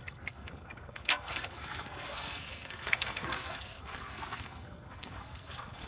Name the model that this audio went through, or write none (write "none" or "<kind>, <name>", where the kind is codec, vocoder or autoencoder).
codec, SNAC